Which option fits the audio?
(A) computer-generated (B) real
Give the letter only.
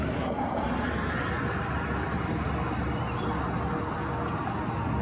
B